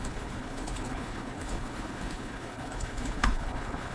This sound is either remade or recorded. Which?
remade